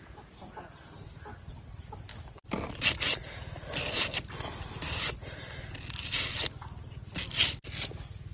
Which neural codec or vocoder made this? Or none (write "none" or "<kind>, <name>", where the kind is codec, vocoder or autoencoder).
none